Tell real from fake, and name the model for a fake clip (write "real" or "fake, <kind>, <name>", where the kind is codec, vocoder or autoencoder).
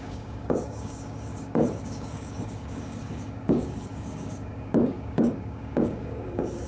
fake, codec, DAC